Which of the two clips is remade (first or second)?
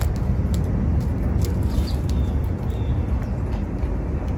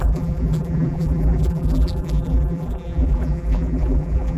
second